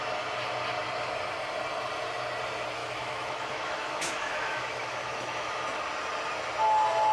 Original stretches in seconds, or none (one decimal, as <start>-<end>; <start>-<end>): 0.0-2.8; 5.6-7.1